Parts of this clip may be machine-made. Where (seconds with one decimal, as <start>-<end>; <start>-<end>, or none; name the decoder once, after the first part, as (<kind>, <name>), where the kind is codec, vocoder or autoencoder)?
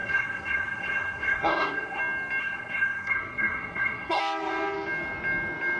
0.0-2.0 (codec, SNAC); 2.4-4.2